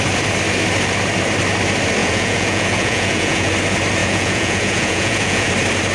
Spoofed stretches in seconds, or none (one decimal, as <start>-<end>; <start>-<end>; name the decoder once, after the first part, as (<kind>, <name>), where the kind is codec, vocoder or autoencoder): 2.0-3.5 (vocoder, Vocos); 4.0-5.5